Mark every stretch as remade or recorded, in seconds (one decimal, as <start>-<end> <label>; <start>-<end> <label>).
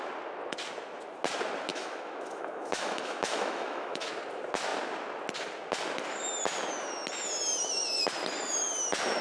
0.0-1.7 recorded; 1.7-4.1 remade; 4.1-9.2 recorded